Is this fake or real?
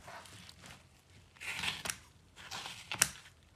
real